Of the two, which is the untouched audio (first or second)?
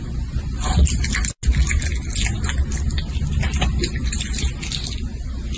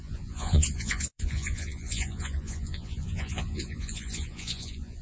first